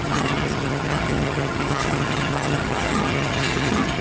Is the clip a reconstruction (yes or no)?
yes